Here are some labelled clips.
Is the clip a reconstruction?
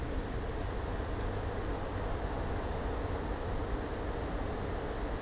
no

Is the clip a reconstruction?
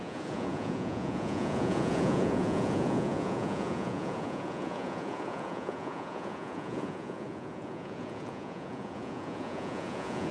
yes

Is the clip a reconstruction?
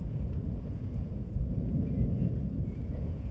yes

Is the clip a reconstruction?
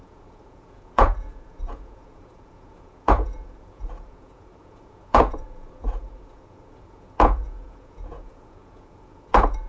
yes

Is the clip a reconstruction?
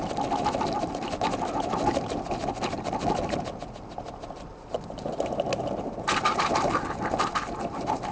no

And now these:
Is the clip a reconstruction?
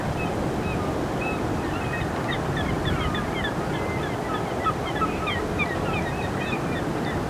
no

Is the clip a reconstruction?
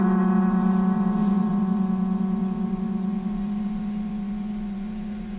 yes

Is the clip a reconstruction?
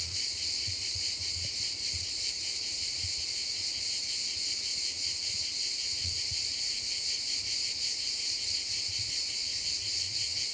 yes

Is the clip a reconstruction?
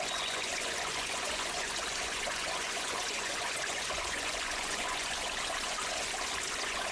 yes